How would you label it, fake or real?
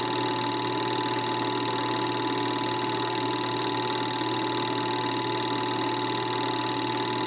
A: real